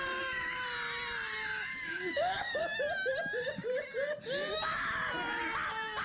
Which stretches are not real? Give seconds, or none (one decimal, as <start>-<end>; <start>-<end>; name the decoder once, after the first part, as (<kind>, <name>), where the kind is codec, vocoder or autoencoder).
1.7-2.6 (codec, DAC)